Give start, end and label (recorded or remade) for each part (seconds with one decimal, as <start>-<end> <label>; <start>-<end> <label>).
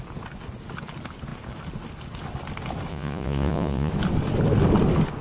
0.0-2.9 recorded; 2.9-3.9 remade; 3.9-5.2 recorded